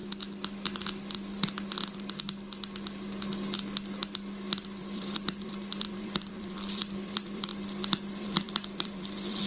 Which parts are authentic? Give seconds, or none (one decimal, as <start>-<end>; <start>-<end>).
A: 0.0-4.8; 7.5-8.2